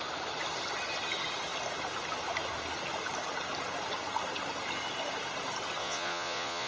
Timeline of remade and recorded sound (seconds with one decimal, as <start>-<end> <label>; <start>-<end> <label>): 0.0-5.8 recorded; 5.8-6.7 remade